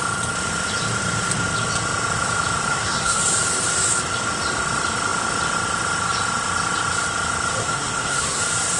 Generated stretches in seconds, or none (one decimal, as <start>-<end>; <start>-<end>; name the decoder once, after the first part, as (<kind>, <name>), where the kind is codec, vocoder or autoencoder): 2.7-3.2 (codec, SNAC); 7.6-8.4